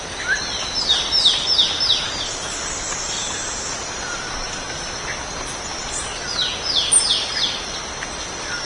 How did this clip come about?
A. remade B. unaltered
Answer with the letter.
B